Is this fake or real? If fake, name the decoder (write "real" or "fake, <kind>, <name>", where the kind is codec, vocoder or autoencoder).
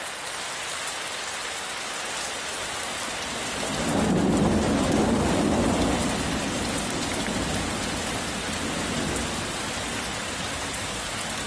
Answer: real